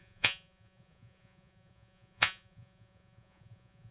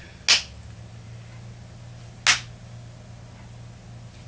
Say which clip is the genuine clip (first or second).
second